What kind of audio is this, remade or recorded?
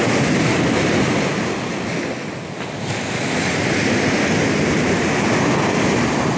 recorded